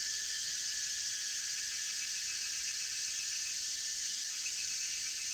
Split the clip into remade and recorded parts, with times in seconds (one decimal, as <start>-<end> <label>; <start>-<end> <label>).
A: 0.0-0.5 remade; 0.5-4.0 recorded; 4.0-4.7 remade; 4.7-5.3 recorded

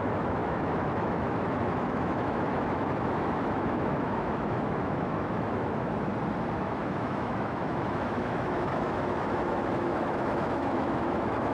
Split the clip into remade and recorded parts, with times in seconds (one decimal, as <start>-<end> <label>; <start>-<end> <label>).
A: 0.0-6.1 remade; 6.1-6.6 recorded; 6.6-11.5 remade

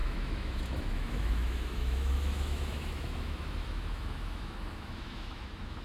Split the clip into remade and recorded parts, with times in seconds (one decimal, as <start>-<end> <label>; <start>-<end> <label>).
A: 0.0-5.8 remade